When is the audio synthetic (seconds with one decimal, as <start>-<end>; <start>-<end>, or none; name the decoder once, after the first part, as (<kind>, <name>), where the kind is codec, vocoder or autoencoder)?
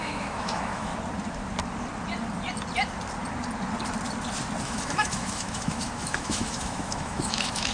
0.0-0.9 (autoencoder, DAC-VAE); 4.6-7.7